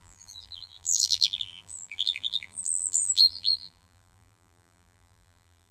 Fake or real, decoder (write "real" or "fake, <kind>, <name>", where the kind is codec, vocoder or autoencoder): fake, vocoder, BigVGAN v2